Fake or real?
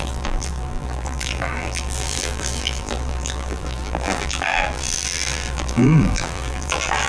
fake